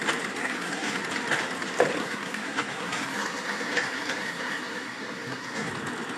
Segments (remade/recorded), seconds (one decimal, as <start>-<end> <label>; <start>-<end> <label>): 0.0-0.4 recorded; 0.4-1.0 remade; 1.0-2.0 recorded; 2.0-5.7 remade; 5.7-6.2 recorded